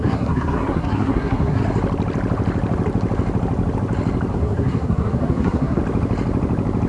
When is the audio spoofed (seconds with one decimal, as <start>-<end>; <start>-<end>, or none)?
0.0-1.6; 4.3-5.8